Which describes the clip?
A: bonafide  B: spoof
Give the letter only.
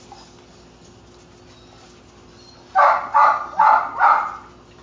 A